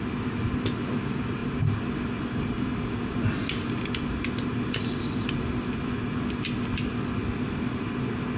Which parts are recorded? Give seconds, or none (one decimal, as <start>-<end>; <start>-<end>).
0.0-8.4